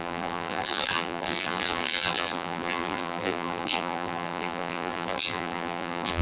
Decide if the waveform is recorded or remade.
remade